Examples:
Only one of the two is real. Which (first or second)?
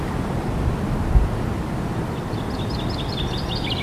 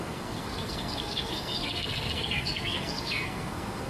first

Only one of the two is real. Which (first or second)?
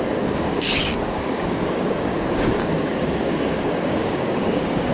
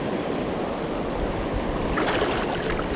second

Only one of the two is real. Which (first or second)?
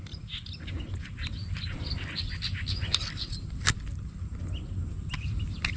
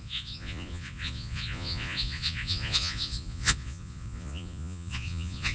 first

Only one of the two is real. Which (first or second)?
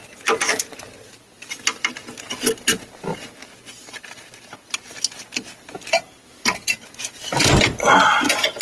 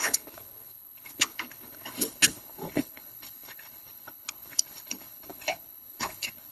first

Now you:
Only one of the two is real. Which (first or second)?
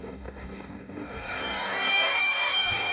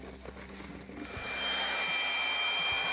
second